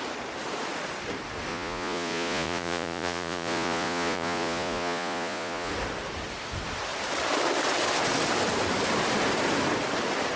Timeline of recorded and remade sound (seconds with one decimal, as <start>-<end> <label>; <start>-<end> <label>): 0.0-1.5 recorded; 1.5-5.7 remade; 5.7-10.4 recorded